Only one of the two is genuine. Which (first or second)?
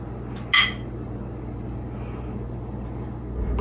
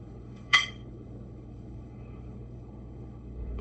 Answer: first